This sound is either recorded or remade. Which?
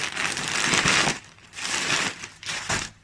recorded